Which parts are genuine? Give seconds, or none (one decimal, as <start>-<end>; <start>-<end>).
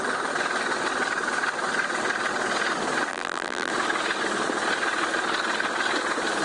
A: 0.0-3.1; 3.7-6.4